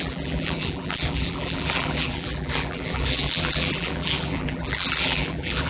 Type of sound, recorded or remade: remade